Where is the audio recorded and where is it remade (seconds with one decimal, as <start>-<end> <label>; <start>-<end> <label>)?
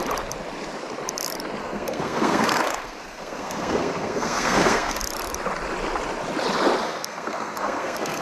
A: 0.0-1.6 recorded; 1.6-5.0 remade; 5.0-6.8 recorded; 6.8-8.2 remade